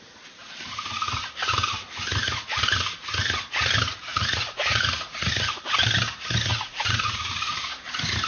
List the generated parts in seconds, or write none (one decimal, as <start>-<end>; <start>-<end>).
4.1-5.3; 6.5-7.2